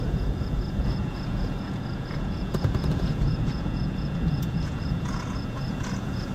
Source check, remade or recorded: remade